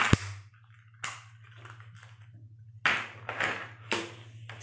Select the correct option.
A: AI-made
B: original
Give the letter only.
B